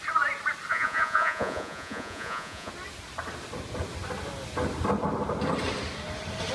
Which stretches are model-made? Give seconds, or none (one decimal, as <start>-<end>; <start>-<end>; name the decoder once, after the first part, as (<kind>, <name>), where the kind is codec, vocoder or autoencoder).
0.7-2.7 (vocoder, Vocos)